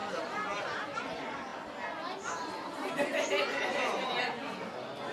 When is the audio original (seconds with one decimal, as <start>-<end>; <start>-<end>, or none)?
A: 0.0-5.1